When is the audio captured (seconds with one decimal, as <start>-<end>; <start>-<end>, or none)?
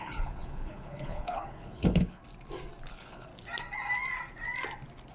2.2-2.9; 3.3-5.1